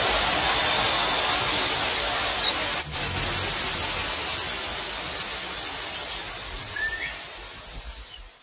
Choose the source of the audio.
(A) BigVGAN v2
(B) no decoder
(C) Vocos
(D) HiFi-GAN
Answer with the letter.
B